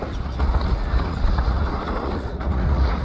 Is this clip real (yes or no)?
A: no